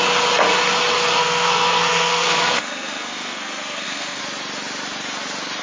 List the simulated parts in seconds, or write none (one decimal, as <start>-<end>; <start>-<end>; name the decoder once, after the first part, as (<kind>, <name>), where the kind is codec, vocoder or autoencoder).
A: 1.2-4.2 (codec, SNAC)